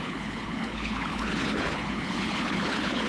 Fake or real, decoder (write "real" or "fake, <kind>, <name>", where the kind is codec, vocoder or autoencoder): fake, codec, HILCodec